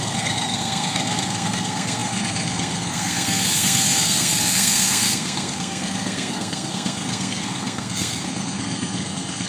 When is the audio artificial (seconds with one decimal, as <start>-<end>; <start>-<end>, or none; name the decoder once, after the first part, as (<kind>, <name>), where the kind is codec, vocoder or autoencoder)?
0.0-9.5 (codec, SNAC)